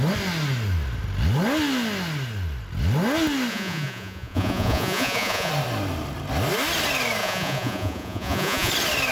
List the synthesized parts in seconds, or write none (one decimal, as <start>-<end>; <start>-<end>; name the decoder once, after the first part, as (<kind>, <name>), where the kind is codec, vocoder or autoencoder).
3.5-5.5 (vocoder, Vocos); 7.2-8.7